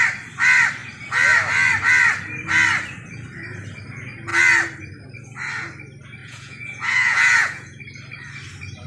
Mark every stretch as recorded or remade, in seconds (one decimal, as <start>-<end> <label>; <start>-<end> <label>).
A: 0.0-6.2 recorded; 6.2-7.8 remade; 7.8-8.9 recorded